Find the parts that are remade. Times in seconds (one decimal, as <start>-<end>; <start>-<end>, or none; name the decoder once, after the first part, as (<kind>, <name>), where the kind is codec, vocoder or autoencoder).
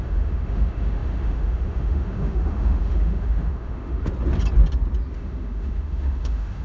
0.0-4.1 (autoencoder, DAC-VAE); 5.1-6.6